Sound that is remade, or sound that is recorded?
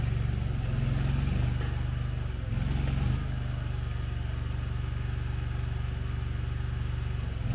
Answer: recorded